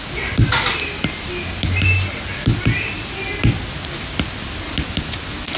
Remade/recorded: recorded